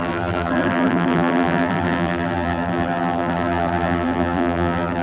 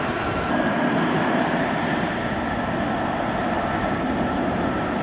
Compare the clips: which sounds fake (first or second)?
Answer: first